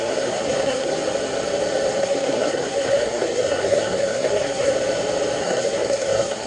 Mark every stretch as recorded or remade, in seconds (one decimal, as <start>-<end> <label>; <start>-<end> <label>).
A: 0.0-1.0 remade; 1.0-2.0 recorded; 2.0-4.7 remade; 4.7-5.4 recorded; 5.4-6.5 remade